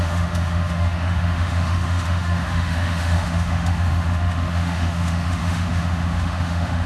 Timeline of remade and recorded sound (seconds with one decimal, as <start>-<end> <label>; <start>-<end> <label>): 0.0-6.9 remade